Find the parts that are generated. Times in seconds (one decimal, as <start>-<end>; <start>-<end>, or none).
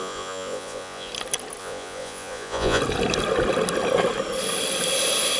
0.0-1.1; 1.6-2.8